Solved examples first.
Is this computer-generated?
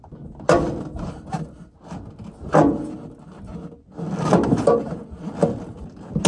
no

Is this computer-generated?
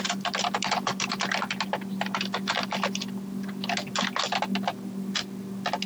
no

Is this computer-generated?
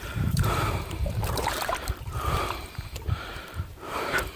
yes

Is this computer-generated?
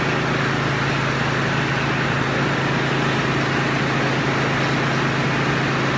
no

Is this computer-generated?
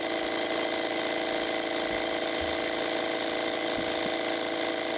no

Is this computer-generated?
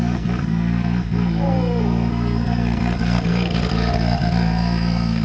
yes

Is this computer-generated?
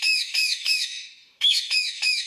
yes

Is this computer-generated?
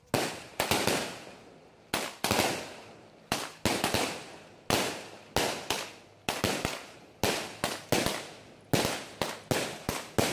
no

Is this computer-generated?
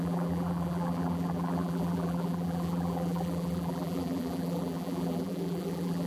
yes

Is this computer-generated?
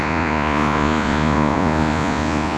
yes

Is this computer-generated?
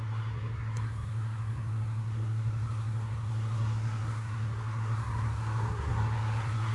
yes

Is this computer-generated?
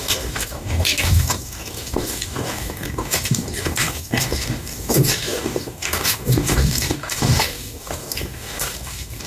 yes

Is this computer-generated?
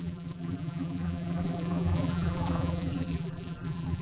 yes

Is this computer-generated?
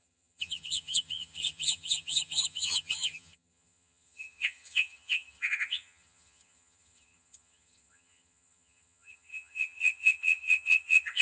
yes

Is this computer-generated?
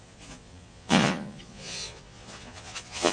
yes